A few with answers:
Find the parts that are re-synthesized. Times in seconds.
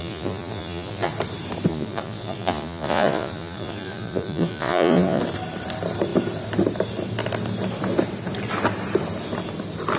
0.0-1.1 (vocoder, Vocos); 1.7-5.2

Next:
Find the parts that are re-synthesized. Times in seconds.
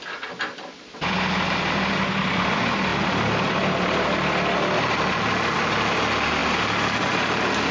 none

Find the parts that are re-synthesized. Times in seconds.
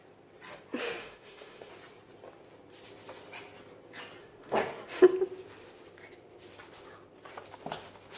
0.9-1.7 (autoencoder, DAC-VAE); 4.2-4.8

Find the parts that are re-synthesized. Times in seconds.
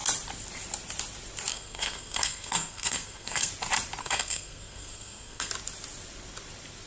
1.5-3.5 (codec, SNAC); 4.0-5.5